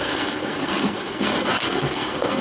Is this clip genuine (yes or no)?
no